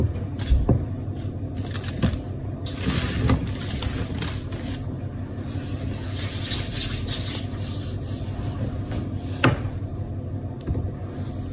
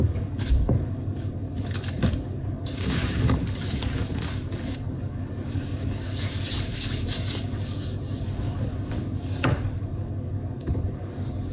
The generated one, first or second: second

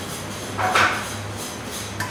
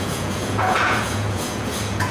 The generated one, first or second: second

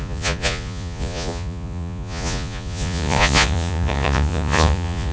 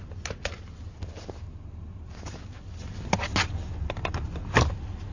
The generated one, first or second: first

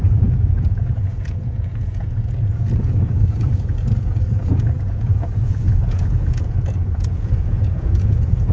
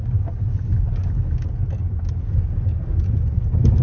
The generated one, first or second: first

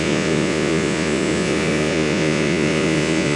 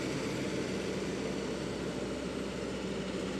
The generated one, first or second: first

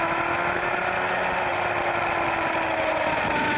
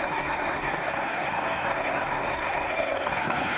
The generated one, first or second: second